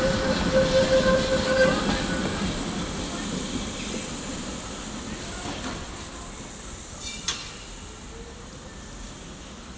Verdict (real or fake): real